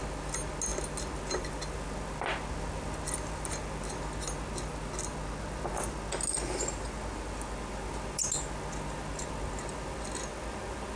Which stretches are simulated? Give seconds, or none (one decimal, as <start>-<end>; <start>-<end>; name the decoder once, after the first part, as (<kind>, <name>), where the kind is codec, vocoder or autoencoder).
none